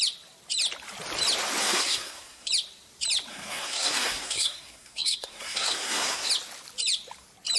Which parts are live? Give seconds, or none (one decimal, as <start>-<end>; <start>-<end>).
0.0-1.6; 2.5-3.3; 6.3-7.6